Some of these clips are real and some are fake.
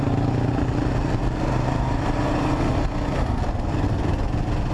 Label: real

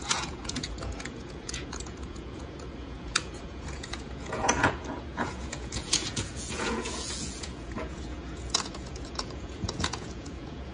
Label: fake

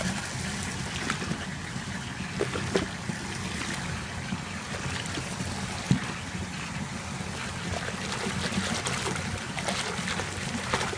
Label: real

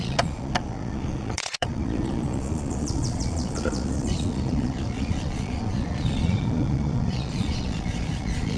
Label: fake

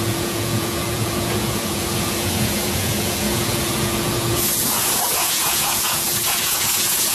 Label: fake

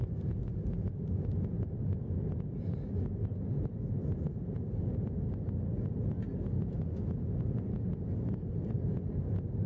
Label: real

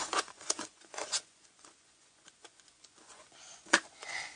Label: fake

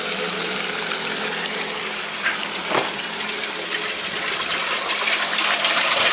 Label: real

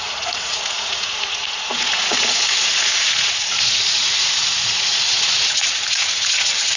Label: fake